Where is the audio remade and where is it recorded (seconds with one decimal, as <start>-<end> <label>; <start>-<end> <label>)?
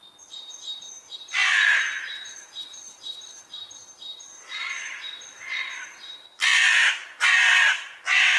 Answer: 0.0-7.0 recorded; 7.0-7.7 remade; 7.7-8.4 recorded